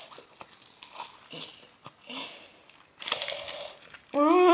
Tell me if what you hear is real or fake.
real